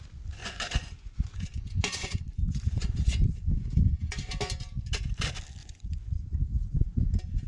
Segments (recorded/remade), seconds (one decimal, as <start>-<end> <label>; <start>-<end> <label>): 0.0-0.4 recorded; 0.4-4.4 remade; 4.4-5.6 recorded; 5.6-6.1 remade; 6.1-6.5 recorded; 6.5-7.1 remade; 7.1-7.5 recorded